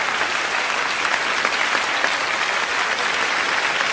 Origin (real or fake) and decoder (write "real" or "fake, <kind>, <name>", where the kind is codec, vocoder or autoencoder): real